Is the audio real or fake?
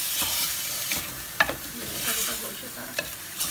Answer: fake